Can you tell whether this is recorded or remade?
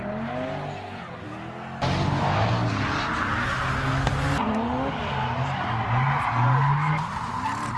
recorded